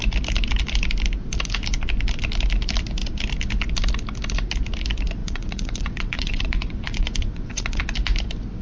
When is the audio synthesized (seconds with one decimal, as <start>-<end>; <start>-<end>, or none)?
5.2-7.8

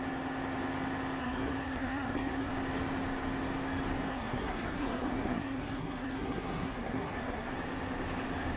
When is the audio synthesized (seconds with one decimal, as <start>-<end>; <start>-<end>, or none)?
1.2-2.5; 4.1-7.5

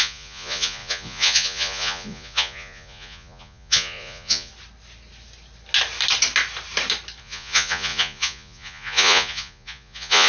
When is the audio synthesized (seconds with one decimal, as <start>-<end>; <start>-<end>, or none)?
0.0-4.5; 7.2-10.3

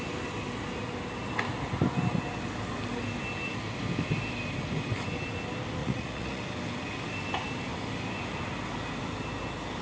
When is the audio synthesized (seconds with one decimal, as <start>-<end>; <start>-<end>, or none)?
5.8-6.4

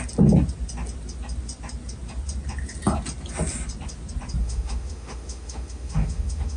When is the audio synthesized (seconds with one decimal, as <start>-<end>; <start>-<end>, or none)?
4.4-6.6

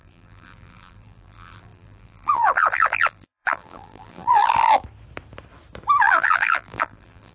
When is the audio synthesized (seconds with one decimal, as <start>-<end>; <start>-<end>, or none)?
0.0-4.8; 6.0-7.3

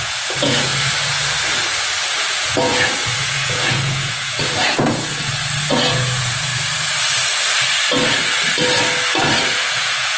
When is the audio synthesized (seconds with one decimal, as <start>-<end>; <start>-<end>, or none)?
0.0-0.7; 2.2-5.3; 5.9-6.5; 9.5-10.2

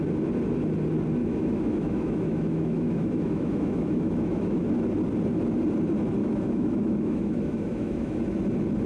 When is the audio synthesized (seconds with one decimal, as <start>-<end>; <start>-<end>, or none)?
1.2-4.7; 6.2-8.2